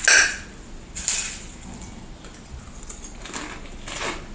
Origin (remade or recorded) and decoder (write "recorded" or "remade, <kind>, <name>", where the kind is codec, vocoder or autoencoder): recorded